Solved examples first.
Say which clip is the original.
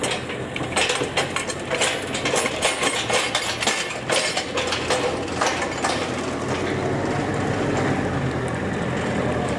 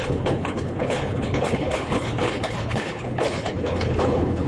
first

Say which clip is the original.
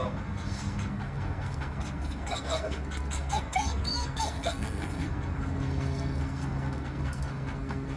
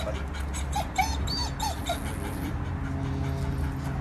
second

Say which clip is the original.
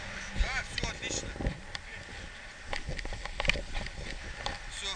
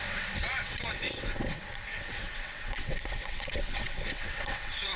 first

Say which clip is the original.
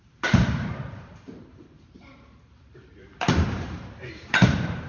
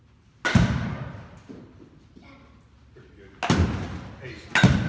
second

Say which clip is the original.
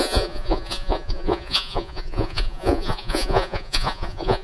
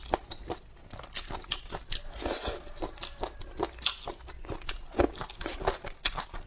second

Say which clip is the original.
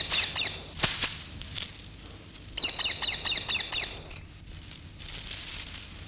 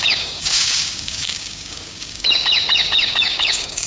first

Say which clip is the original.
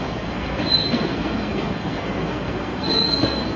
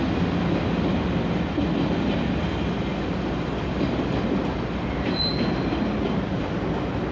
second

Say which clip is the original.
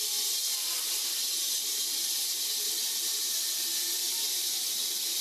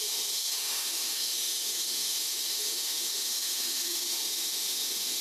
first